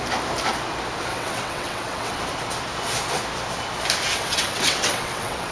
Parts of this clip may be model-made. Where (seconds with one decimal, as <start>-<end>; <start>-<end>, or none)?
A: 1.1-2.2; 4.1-5.5